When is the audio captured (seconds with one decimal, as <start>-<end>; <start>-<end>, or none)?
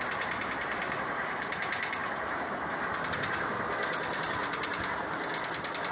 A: 0.0-5.9